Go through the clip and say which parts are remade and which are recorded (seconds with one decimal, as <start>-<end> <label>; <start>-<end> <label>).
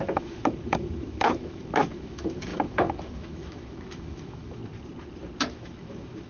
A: 0.0-4.6 remade; 4.6-5.5 recorded; 5.5-6.3 remade